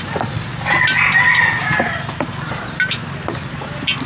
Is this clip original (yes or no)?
yes